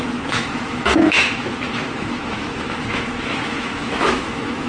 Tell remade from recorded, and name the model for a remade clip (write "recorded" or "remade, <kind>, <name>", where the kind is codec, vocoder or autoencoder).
remade, autoencoder, DAC-VAE